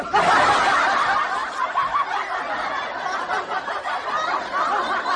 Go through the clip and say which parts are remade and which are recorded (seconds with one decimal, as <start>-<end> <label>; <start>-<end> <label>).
0.0-5.2 recorded